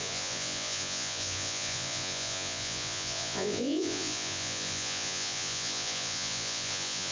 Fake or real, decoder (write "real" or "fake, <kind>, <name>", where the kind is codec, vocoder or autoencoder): fake, vocoder, Vocos